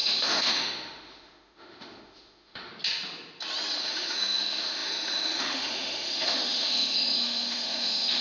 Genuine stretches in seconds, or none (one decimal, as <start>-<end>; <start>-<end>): 2.7-3.8